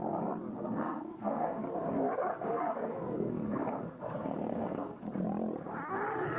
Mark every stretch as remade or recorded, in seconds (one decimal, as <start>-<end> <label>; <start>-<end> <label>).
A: 0.0-0.5 recorded; 0.5-1.6 remade; 1.6-2.3 recorded; 2.3-5.0 remade; 5.0-6.4 recorded